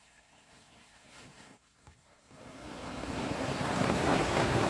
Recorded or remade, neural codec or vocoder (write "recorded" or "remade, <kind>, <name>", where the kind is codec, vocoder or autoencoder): remade, codec, SNAC